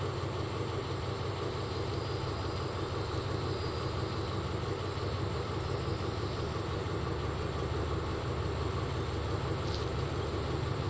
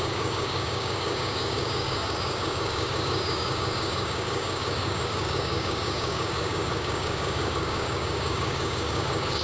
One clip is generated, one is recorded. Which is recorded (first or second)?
first